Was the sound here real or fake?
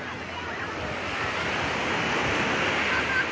real